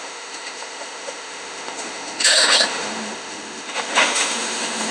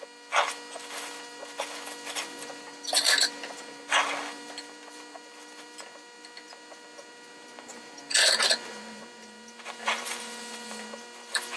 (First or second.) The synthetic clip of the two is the first